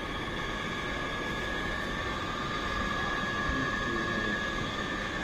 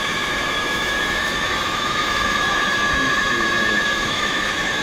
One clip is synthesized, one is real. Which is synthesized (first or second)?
second